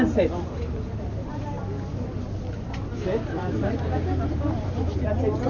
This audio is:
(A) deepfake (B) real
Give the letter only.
B